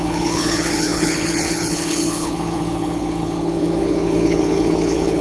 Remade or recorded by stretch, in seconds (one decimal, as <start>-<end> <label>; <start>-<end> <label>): 0.0-5.2 remade